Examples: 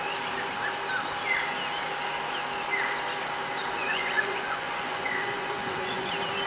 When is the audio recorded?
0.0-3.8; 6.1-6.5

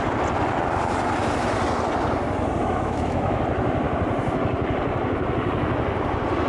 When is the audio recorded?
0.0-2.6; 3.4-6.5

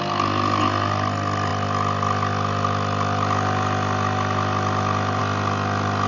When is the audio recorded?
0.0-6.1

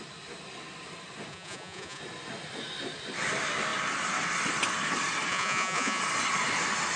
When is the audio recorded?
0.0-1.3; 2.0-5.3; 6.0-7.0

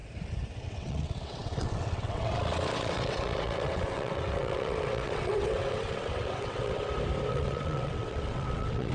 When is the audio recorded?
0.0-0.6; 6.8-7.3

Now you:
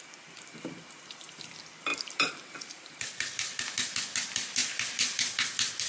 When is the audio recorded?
0.0-1.9; 3.0-5.9

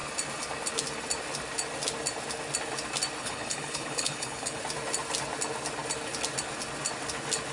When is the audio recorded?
0.0-3.2; 4.6-7.5